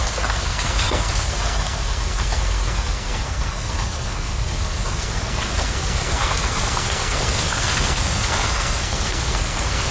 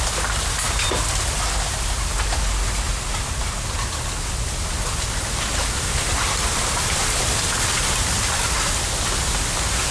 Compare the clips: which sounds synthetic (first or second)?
first